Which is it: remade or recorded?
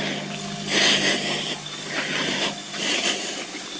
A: recorded